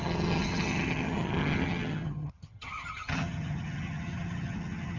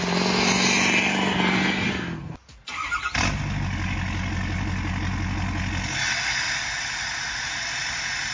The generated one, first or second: first